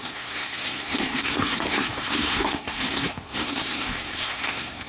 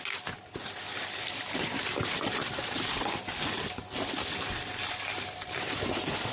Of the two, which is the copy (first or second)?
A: first